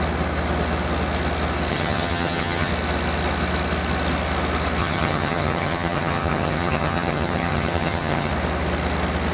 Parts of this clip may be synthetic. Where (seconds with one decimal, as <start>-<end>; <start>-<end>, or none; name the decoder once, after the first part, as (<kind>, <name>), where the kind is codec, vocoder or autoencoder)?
1.7-2.7 (vocoder, HiFi-GAN); 4.8-8.3